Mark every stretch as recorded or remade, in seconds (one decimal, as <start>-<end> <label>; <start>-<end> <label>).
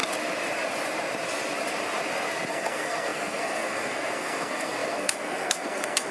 0.0-2.5 recorded; 2.5-6.1 remade